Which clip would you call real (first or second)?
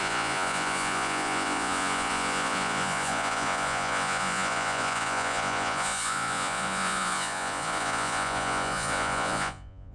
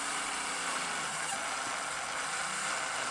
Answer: second